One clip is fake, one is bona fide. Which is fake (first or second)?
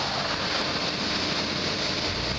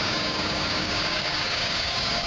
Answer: second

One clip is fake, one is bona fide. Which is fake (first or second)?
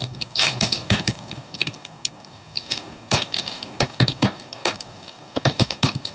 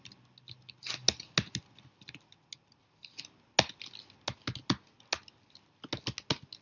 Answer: first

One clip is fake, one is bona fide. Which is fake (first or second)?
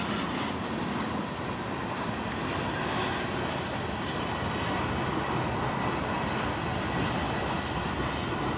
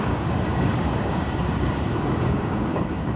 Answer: second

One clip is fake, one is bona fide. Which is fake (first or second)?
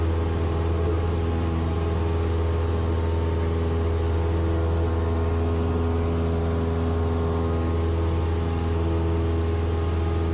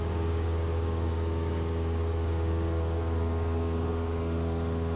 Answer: second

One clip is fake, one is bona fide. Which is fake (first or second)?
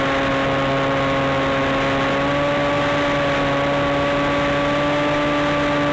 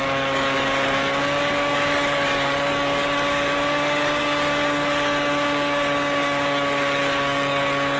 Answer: second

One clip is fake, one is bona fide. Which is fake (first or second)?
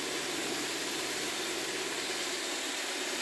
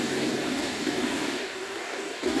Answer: second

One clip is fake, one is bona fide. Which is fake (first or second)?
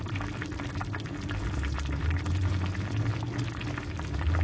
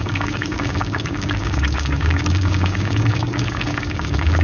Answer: second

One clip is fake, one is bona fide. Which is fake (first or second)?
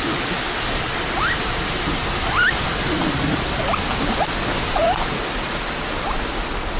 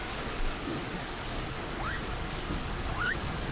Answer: second